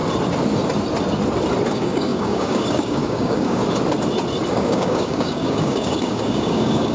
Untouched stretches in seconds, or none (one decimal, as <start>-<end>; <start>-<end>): 0.0-1.7; 3.6-4.5

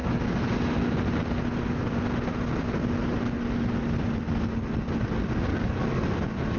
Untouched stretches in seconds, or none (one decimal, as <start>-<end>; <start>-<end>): 0.0-5.5; 6.1-6.6

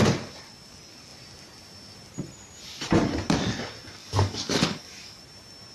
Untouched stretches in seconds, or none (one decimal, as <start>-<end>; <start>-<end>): 0.0-4.0; 5.2-5.7

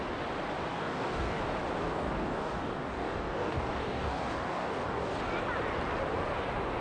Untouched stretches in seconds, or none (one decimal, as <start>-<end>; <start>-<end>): 0.0-0.7; 1.4-1.8; 5.2-6.8

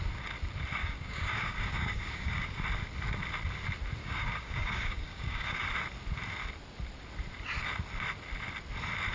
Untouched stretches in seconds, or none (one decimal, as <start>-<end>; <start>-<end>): 0.0-0.8; 2.6-4.0; 5.7-9.1